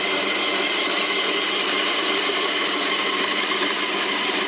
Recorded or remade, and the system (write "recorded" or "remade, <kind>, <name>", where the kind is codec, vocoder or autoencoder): recorded